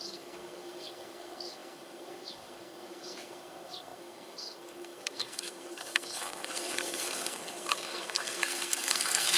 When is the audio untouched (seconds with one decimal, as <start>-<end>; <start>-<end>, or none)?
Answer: none